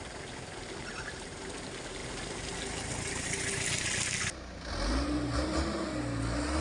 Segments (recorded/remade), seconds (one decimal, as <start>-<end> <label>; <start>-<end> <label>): 0.0-6.6 recorded